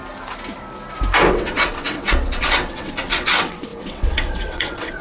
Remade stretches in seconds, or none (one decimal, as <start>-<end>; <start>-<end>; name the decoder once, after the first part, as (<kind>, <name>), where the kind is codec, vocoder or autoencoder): 1.3-5.0 (vocoder, WaveNeXt)